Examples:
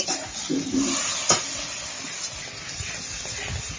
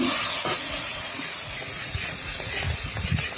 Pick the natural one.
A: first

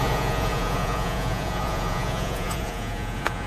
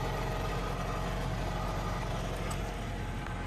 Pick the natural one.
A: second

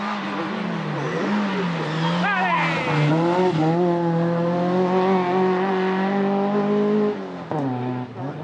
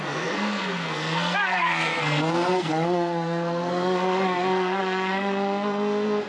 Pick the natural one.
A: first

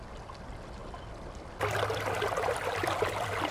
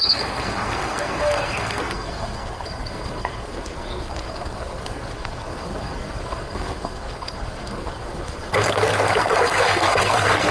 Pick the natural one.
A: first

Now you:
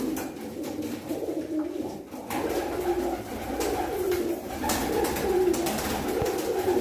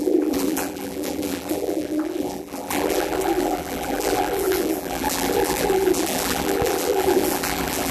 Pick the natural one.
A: first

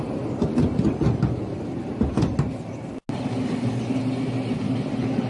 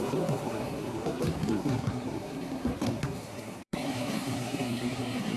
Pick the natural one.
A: first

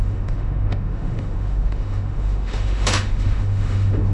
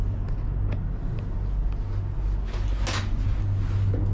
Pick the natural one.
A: second